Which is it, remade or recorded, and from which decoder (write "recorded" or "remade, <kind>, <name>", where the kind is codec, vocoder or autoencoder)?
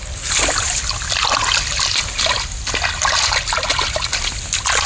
recorded